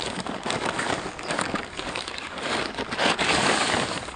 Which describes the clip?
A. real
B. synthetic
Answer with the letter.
B